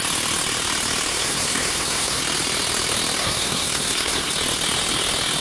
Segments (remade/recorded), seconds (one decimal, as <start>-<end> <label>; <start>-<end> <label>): 0.0-1.1 recorded; 1.1-2.2 remade; 2.2-3.2 recorded; 3.2-4.3 remade; 4.3-5.4 recorded